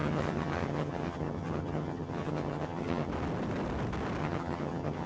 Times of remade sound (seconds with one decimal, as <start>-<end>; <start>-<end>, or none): 0.0-3.1; 4.2-5.1